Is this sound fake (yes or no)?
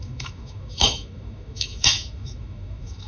yes